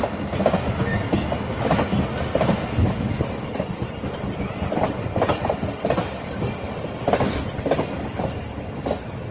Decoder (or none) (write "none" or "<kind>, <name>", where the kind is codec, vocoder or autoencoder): none